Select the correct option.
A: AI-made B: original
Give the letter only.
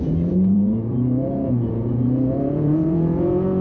A